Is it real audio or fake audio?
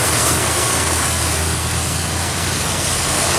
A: fake